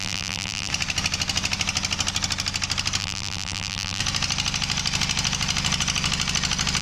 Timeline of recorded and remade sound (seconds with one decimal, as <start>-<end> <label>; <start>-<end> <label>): 0.0-0.7 remade; 0.7-3.0 recorded; 3.0-4.0 remade; 4.0-6.8 recorded